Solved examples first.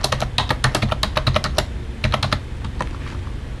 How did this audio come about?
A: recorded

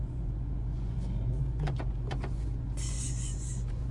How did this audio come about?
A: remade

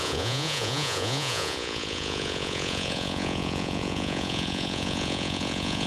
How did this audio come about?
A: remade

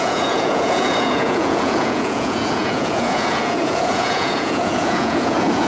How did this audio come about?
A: remade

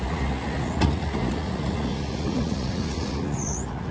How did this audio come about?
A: remade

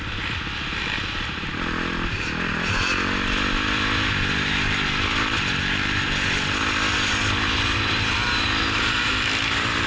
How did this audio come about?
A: recorded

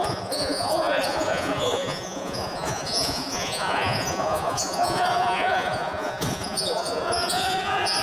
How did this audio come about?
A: remade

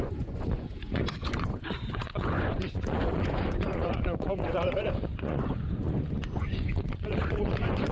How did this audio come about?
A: remade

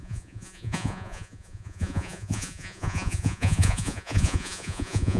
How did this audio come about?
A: remade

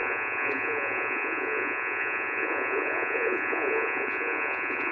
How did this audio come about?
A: remade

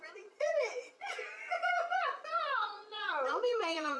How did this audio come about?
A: remade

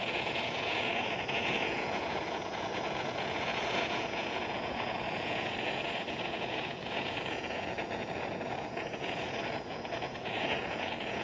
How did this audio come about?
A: remade